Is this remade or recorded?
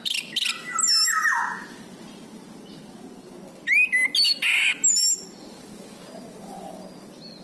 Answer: recorded